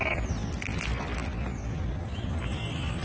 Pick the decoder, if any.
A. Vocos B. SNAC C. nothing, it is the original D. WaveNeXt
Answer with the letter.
C